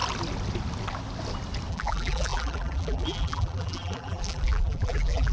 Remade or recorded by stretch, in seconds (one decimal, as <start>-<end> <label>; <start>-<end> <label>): 0.0-1.7 recorded; 1.7-5.3 remade